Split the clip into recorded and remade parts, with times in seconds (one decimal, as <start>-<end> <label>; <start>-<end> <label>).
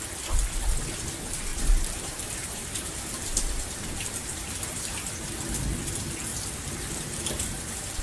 0.0-1.5 recorded; 1.5-5.3 remade; 5.3-6.3 recorded; 6.3-8.0 remade